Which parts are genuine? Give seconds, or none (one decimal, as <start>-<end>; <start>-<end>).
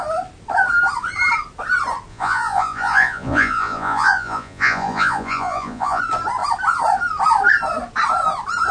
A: 0.0-2.1; 6.0-8.7